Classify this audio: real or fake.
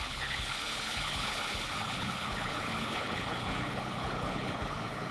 fake